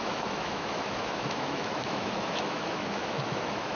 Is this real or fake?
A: fake